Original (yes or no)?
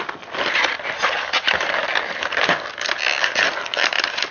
yes